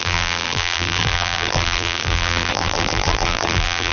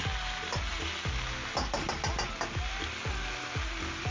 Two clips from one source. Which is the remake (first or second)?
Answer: first